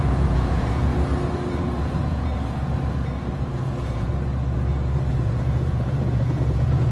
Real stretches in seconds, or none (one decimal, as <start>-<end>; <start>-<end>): 0.9-1.8; 2.3-3.3; 4.1-5.1